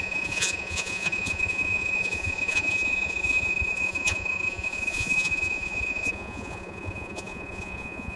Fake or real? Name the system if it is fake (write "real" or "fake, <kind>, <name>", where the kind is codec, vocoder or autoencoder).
fake, vocoder, Vocos